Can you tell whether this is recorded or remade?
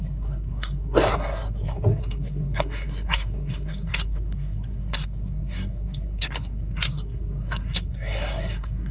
remade